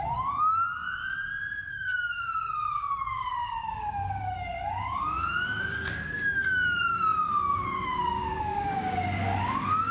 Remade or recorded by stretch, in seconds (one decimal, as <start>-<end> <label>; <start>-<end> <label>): 0.0-1.0 remade; 1.0-1.7 recorded; 1.7-9.9 remade